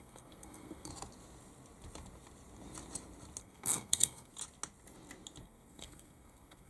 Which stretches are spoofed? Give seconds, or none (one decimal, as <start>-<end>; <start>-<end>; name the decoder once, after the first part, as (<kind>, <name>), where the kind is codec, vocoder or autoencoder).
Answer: 0.0-0.9 (codec, SNAC); 3.4-4.3; 5.4-6.7